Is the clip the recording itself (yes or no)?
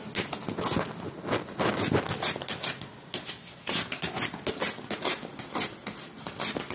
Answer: yes